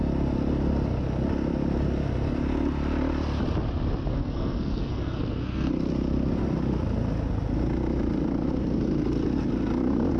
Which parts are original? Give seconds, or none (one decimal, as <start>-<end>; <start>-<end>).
0.0-4.1; 5.7-10.2